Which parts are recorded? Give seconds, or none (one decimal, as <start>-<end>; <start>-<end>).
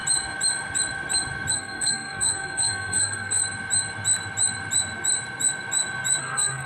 0.0-1.5; 3.4-6.2